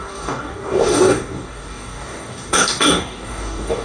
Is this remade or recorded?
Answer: remade